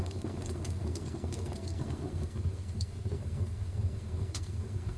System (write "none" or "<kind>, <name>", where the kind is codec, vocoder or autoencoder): codec, SNAC